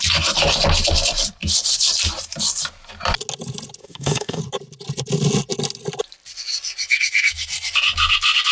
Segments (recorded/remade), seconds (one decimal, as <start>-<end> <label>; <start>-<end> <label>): 0.0-3.8 recorded; 3.8-4.4 remade; 4.4-8.5 recorded